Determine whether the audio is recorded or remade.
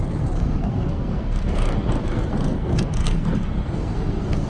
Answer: remade